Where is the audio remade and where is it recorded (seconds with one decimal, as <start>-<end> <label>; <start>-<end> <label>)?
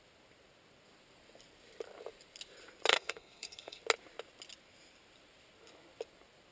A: 0.0-2.9 recorded; 2.9-3.8 remade; 3.8-6.5 recorded